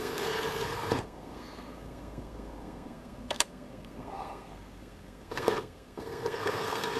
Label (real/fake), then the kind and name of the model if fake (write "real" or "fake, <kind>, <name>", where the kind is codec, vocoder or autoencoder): fake, codec, SNAC